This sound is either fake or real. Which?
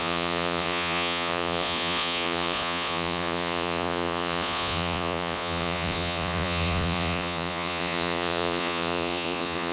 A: fake